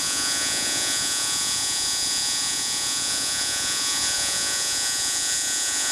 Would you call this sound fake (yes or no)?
yes